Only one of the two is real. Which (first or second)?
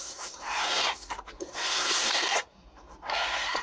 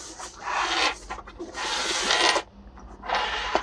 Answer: second